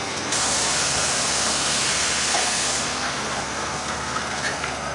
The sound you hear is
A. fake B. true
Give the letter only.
A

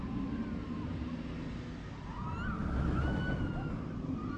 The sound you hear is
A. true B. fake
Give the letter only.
A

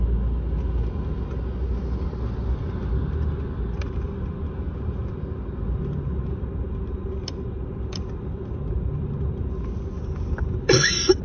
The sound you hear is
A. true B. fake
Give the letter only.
A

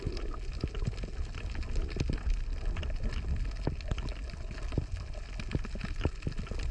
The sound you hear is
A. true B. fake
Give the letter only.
A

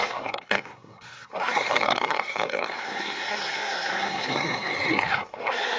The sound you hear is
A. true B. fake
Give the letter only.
B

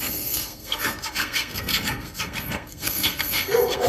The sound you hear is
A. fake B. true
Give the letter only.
A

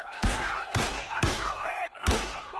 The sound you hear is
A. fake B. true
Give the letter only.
A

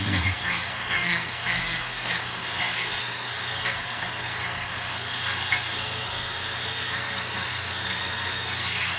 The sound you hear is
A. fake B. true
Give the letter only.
A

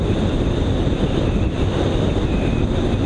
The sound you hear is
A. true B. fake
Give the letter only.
A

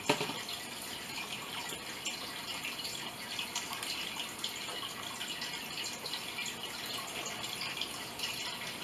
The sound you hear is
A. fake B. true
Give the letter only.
B